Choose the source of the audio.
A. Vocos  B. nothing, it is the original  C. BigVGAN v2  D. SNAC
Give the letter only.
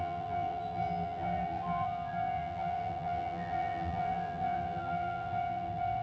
C